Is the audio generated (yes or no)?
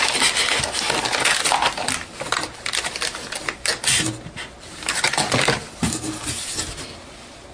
no